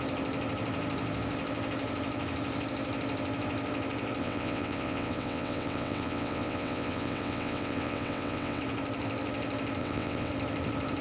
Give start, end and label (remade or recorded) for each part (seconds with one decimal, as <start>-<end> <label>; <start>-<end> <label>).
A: 0.0-4.2 recorded; 4.2-8.6 remade; 8.6-9.8 recorded; 9.8-10.3 remade; 10.3-11.0 recorded